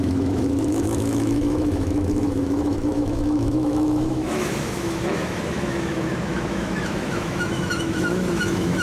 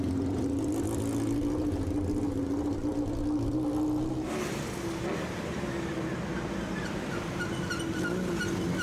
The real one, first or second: second